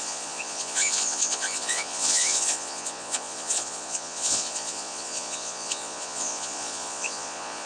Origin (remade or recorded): remade